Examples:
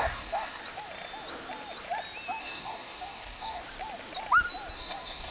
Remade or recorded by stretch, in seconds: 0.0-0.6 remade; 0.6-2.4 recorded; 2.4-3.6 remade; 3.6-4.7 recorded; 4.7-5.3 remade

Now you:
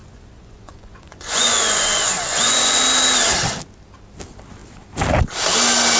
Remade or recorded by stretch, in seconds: 0.0-2.8 remade; 2.8-6.0 recorded

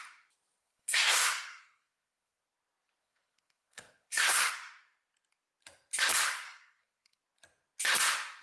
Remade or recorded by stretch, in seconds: 0.0-0.6 recorded; 0.6-2.4 remade; 2.4-3.0 recorded; 3.0-4.5 remade; 4.5-6.3 recorded; 6.3-7.2 remade; 7.2-8.4 recorded

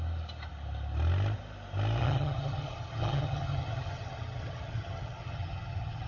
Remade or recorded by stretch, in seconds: 0.0-2.0 recorded; 2.0-6.1 remade

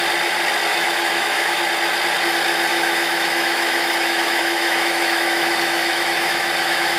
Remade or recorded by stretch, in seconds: 0.0-0.7 recorded; 0.7-1.6 remade; 1.6-2.7 recorded; 2.7-7.0 remade